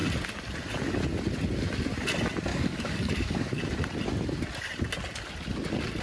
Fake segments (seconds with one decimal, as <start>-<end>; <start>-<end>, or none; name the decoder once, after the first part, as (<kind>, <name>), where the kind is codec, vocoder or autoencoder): 2.5-3.6 (codec, DAC)